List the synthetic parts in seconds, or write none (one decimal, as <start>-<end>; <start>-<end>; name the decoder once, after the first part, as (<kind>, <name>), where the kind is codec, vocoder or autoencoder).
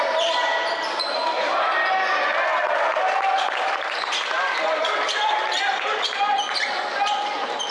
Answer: none